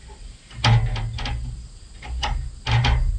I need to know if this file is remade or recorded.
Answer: recorded